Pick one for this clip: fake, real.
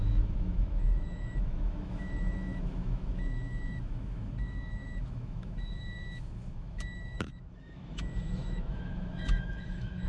fake